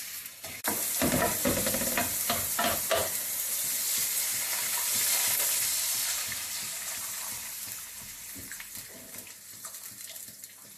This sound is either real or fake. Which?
real